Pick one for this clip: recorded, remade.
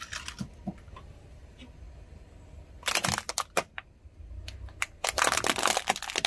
recorded